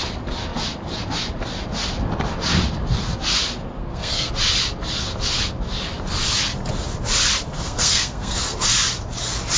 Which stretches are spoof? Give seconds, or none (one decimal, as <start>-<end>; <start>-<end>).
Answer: 3.8-4.3; 7.5-8.7